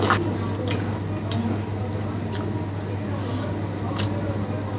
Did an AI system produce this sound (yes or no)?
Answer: no